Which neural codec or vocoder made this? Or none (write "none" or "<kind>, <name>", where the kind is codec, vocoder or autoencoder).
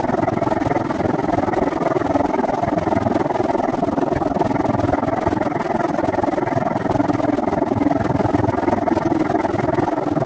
none